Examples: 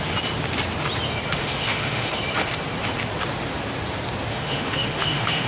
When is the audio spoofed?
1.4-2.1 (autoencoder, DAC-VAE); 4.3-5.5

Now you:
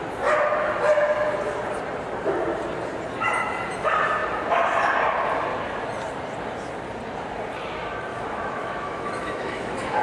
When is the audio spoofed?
8.1-10.0 (autoencoder, DAC-VAE)

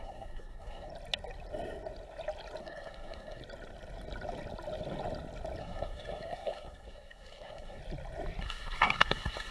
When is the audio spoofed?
0.0-0.9 (codec, SNAC); 2.6-3.4; 5.6-7.8; 8.4-9.5

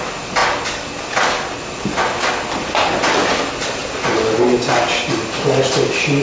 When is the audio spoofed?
none

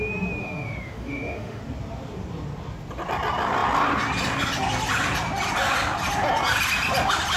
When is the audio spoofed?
0.4-1.6 (autoencoder, DAC-VAE)

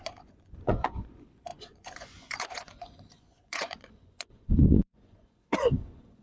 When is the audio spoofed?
0.0-6.2 (vocoder, Vocos)

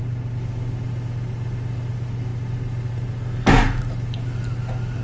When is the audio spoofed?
none